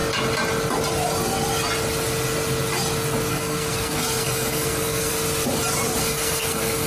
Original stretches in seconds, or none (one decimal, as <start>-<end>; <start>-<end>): 0.0-3.3; 5.1-6.0